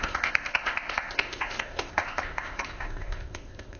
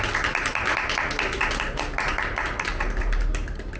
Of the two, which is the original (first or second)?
second